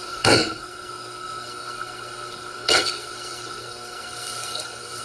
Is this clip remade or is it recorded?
remade